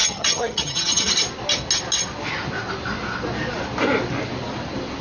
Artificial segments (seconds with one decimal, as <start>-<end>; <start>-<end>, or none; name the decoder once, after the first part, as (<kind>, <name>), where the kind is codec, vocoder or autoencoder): 0.0-1.1 (vocoder, HiFi-GAN)